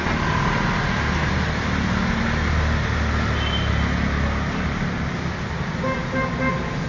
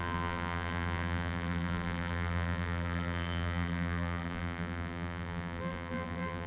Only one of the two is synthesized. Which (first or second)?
second